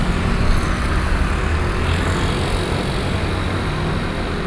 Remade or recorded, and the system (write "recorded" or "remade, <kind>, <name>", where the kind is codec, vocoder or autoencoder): recorded